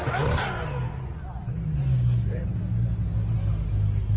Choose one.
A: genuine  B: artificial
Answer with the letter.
A